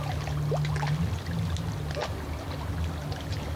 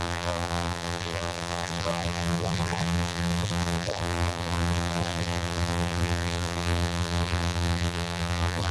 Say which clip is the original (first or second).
first